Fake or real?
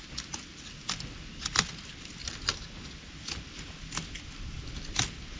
real